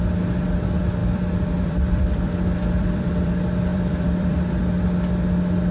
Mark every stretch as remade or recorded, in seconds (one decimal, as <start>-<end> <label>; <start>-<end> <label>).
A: 0.0-1.0 recorded; 1.0-3.3 remade; 3.3-3.7 recorded; 3.7-4.6 remade; 4.6-5.7 recorded